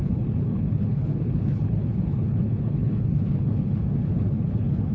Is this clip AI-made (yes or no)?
yes